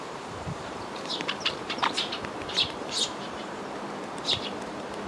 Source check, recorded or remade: remade